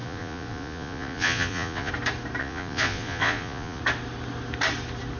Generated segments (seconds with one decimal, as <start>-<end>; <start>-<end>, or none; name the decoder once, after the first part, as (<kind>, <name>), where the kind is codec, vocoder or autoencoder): 0.0-1.9 (vocoder, Vocos); 2.4-3.8